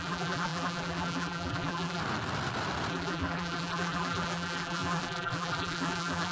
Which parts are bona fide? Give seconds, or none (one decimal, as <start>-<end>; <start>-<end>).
2.0-2.9